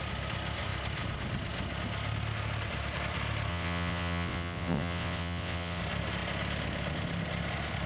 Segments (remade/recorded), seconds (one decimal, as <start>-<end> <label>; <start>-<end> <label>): 0.0-3.5 recorded; 3.5-5.8 remade; 5.8-7.9 recorded